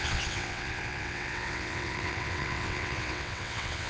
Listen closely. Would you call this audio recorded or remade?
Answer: remade